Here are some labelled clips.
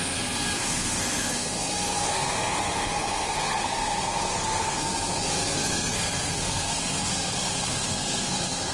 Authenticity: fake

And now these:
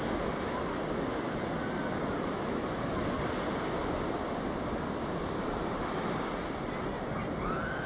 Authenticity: real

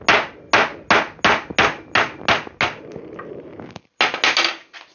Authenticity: real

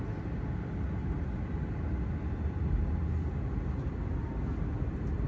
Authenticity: real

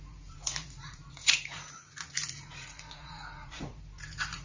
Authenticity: fake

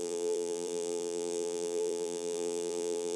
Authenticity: fake